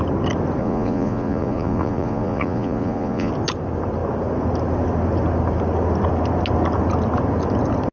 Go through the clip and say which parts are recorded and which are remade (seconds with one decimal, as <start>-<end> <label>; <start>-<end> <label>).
0.0-0.6 recorded; 0.6-3.3 remade; 3.3-7.9 recorded